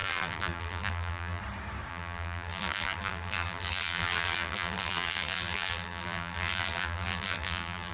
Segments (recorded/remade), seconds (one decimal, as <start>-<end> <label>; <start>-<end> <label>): 0.0-1.4 remade; 1.4-1.9 recorded; 1.9-7.9 remade